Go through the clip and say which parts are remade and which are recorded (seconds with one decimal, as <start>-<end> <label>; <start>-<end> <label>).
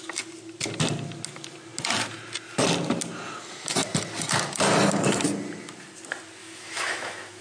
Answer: 0.0-6.4 recorded; 6.4-7.4 remade